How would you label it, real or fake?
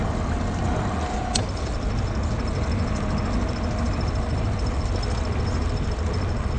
real